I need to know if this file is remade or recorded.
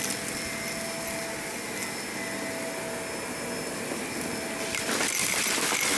recorded